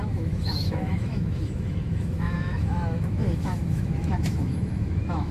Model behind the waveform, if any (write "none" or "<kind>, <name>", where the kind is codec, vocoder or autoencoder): autoencoder, DAC-VAE